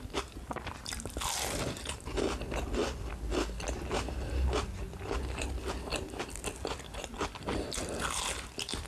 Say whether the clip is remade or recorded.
recorded